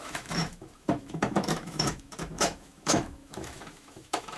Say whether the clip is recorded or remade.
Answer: remade